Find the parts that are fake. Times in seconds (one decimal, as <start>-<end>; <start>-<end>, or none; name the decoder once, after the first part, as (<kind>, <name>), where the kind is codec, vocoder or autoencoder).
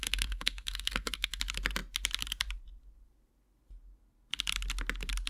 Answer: 0.0-1.4 (codec, SNAC)